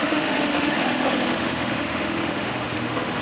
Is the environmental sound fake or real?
fake